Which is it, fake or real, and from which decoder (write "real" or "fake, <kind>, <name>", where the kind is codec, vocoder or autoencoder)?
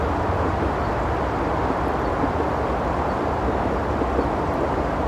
real